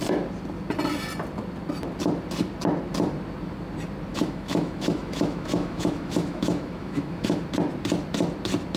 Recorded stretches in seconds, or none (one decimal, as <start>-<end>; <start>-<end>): 0.0-4.1; 7.4-8.8